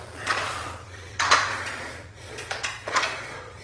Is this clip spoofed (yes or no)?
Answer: yes